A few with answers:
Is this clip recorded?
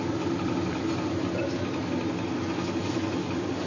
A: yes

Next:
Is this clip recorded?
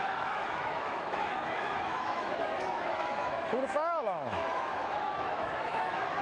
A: no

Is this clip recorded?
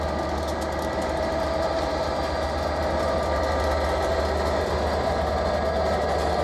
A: yes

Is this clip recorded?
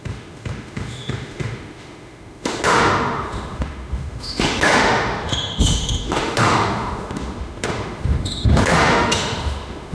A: no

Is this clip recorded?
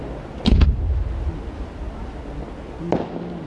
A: yes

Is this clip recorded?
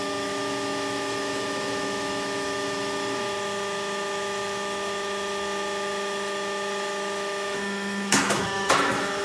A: no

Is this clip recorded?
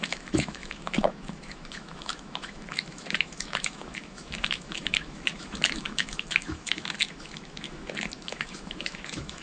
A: no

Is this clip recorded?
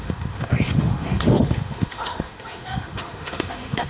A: no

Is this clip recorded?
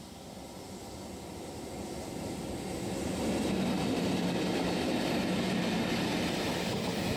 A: yes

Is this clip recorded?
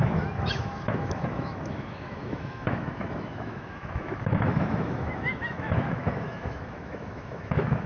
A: no